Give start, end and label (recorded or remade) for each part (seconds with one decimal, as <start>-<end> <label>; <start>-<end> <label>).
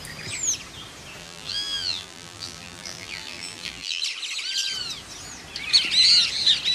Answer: 0.0-1.2 recorded; 1.2-4.0 remade; 4.0-6.7 recorded